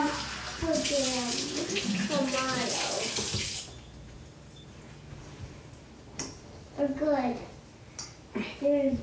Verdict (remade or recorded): recorded